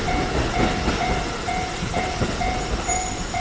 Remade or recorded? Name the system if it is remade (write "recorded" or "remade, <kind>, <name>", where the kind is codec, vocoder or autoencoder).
recorded